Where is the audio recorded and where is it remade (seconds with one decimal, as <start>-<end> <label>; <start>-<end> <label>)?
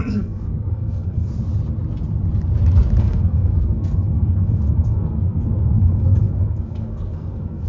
0.0-1.3 remade; 1.3-3.0 recorded; 3.0-7.7 remade